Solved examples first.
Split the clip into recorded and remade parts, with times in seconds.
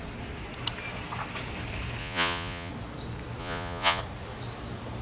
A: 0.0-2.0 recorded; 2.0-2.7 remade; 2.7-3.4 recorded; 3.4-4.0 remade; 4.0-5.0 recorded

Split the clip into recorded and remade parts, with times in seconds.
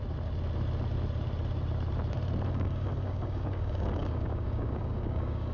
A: 0.0-2.5 recorded; 2.5-5.5 remade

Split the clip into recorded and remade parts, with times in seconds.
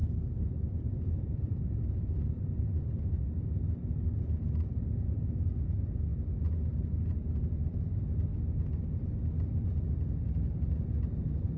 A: 0.0-6.1 remade; 6.1-7.4 recorded; 7.4-8.3 remade; 8.3-10.2 recorded; 10.2-11.6 remade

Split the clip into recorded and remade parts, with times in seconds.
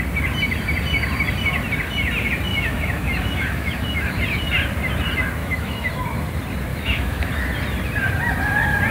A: 0.0-2.5 recorded; 2.5-4.2 remade; 4.2-5.4 recorded; 5.4-5.9 remade; 5.9-6.7 recorded; 6.7-7.3 remade; 7.3-8.9 recorded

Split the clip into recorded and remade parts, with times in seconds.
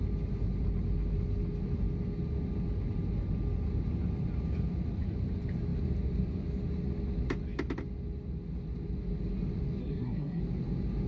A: 0.0-9.8 recorded; 9.8-10.4 remade; 10.4-11.1 recorded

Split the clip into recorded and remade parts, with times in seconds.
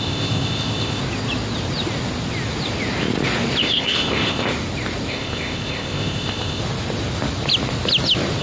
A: 0.0-1.0 remade; 1.0-3.6 recorded; 3.6-4.5 remade; 4.5-5.1 recorded; 5.1-6.6 remade; 6.6-8.4 recorded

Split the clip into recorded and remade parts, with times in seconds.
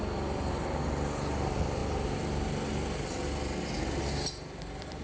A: 0.0-5.0 recorded